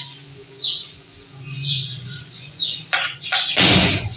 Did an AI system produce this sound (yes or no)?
yes